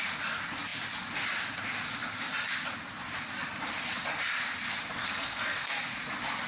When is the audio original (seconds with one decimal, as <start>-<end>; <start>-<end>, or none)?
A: 0.0-5.0; 5.7-6.5